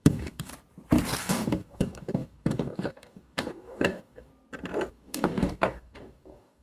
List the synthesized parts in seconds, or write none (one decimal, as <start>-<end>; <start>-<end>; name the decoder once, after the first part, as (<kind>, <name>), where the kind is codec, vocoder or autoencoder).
0.0-0.5 (codec, DAC); 1.2-4.3; 4.9-6.6